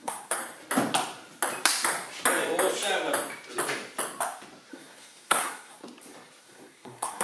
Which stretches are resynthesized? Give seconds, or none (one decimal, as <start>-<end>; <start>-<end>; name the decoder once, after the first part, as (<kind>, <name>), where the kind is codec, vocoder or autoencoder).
0.0-0.4 (codec, SNAC); 4.7-5.8; 6.4-7.2